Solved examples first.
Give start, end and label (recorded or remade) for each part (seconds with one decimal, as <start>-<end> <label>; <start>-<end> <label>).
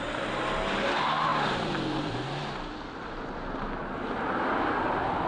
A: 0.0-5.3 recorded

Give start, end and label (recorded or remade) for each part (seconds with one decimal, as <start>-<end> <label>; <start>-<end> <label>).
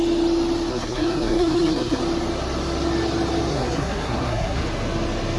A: 0.0-0.7 recorded; 0.7-2.0 remade; 2.0-3.5 recorded; 3.5-4.6 remade; 4.6-5.4 recorded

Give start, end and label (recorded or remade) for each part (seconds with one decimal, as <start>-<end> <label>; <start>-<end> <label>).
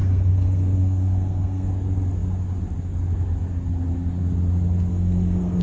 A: 0.0-1.7 remade; 1.7-4.9 recorded; 4.9-5.6 remade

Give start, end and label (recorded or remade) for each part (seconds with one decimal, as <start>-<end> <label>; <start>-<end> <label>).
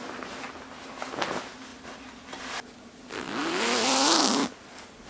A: 0.0-5.1 recorded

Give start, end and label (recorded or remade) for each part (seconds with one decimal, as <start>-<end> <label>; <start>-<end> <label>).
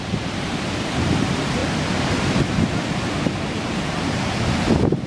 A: 0.0-5.1 recorded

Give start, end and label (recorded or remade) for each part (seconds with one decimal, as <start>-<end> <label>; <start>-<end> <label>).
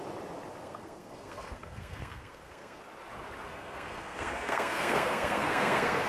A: 0.0-0.6 recorded; 0.6-2.8 remade; 2.8-3.5 recorded; 3.5-6.1 remade